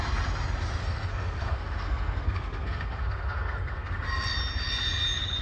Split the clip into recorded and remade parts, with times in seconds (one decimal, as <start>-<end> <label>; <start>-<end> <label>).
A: 0.0-0.8 recorded; 0.8-4.0 remade; 4.0-5.4 recorded